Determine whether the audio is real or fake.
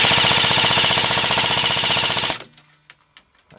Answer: real